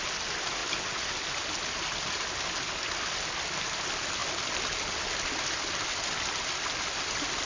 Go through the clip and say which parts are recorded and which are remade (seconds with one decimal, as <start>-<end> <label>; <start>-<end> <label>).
0.0-7.5 recorded